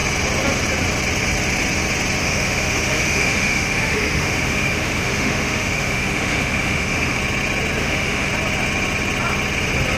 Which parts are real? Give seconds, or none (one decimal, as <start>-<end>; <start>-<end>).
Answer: 0.0-2.2; 7.2-7.8; 8.3-10.0